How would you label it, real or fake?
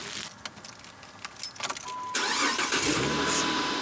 real